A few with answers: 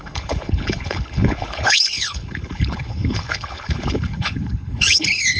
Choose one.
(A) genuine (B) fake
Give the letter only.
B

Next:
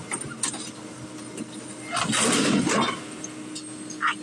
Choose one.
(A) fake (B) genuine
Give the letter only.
B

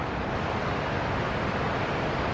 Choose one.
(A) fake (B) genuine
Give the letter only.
B